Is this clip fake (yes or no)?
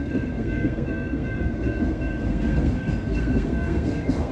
yes